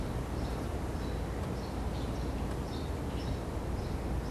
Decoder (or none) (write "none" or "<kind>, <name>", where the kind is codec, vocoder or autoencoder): none